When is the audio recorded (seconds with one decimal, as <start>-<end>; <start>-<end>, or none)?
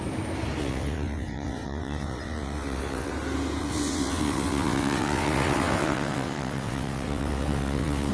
0.0-0.6; 3.1-3.6